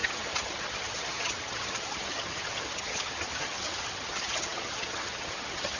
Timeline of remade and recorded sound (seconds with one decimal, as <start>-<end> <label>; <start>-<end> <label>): 0.0-5.8 remade